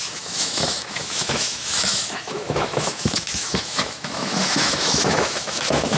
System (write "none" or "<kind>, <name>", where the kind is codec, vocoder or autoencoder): autoencoder, DAC-VAE